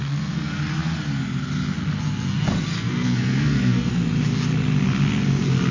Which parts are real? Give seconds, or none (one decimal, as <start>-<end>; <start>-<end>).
0.6-2.7; 3.9-5.7